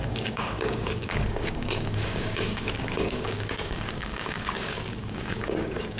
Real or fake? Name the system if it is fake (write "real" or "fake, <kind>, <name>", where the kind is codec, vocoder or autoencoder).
fake, codec, DAC